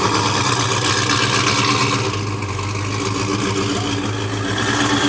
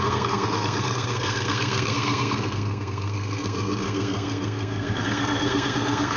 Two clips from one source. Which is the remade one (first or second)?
second